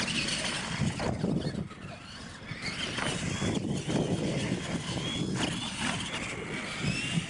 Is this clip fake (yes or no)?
no